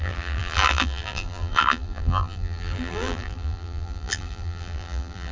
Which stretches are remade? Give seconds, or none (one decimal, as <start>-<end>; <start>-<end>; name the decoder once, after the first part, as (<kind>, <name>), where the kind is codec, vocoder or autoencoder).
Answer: 0.0-5.3 (vocoder, BigVGAN v2)